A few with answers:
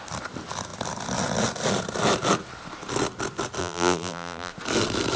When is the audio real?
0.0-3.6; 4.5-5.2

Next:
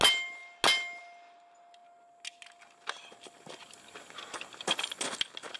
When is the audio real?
0.0-5.6

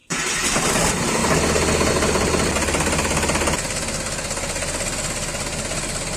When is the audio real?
0.7-6.2